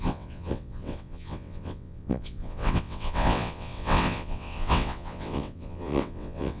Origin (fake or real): fake